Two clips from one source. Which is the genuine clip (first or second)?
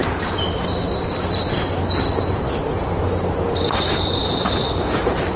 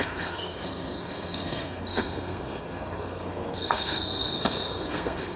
first